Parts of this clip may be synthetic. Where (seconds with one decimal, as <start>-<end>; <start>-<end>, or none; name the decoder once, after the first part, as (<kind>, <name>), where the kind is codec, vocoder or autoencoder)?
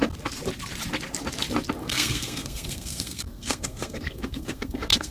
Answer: 1.8-5.1 (codec, SNAC)